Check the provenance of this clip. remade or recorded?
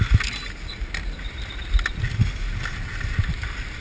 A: recorded